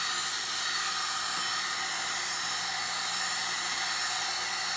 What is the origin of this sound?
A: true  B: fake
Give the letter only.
A